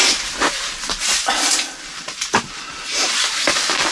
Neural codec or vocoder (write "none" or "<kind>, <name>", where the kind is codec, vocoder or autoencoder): none